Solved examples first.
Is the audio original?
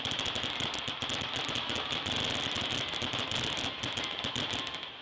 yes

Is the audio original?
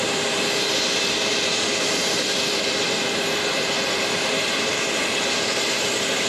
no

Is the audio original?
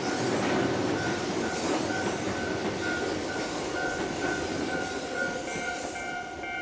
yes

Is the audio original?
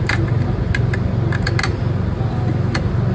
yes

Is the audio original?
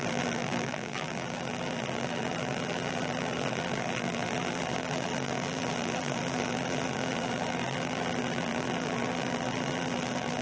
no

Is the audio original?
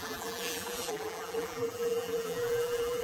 no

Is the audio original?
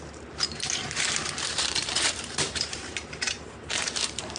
no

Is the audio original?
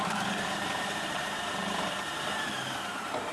no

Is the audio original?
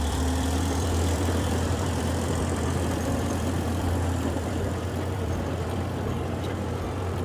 no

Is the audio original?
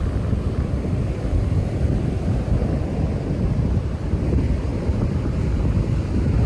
yes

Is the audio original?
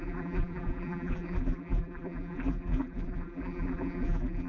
no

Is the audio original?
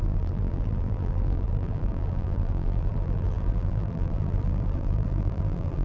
no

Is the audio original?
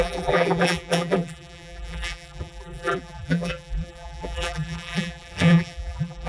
no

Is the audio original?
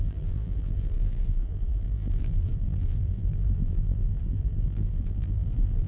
no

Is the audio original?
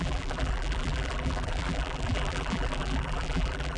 no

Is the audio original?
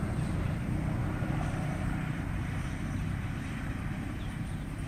no